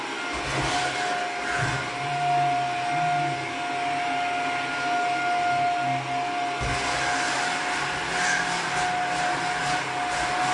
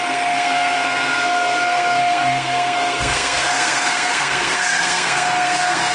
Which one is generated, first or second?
second